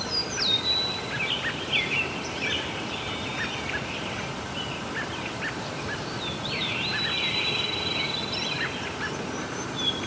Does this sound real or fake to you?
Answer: fake